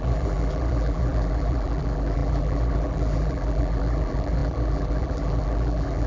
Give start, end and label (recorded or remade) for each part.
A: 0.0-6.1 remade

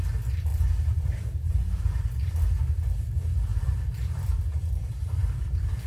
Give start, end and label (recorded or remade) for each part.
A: 0.0-0.5 recorded; 0.5-2.4 remade; 2.4-3.5 recorded; 3.5-4.4 remade; 4.4-5.2 recorded; 5.2-5.9 remade